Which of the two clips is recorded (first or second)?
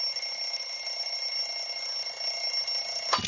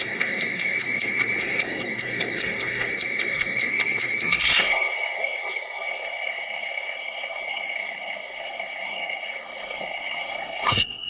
first